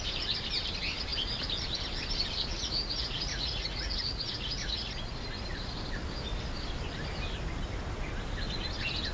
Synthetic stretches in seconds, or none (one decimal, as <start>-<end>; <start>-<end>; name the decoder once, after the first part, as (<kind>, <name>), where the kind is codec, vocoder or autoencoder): 2.5-4.9 (vocoder, Vocos)